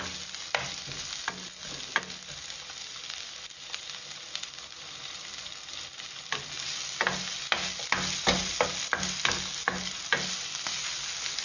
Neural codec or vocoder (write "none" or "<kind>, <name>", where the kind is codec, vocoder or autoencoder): none